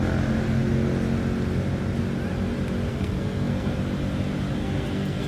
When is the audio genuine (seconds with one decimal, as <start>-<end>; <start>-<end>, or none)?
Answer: 0.0-2.9; 3.8-4.6